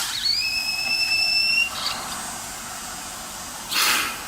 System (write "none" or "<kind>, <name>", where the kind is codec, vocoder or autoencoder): none